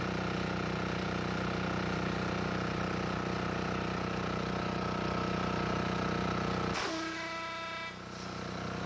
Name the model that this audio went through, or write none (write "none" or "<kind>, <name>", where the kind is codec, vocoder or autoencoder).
none